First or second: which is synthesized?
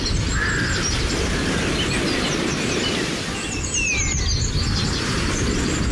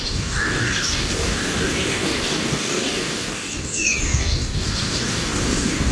second